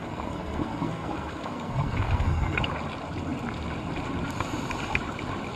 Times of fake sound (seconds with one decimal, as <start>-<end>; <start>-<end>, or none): 0.0-2.6